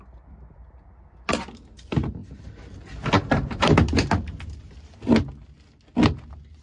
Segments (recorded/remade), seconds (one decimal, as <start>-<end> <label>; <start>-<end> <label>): 0.0-6.6 recorded